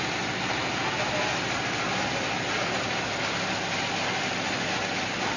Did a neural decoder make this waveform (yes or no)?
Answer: no